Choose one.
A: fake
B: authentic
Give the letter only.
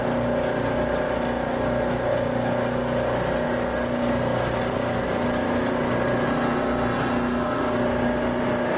B